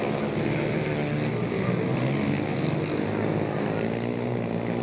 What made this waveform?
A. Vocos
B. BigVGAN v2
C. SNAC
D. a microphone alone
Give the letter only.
D